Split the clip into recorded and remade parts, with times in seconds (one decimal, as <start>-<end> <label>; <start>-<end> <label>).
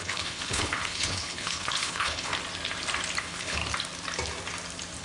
0.0-2.3 remade; 2.3-3.2 recorded; 3.2-3.6 remade; 3.6-5.0 recorded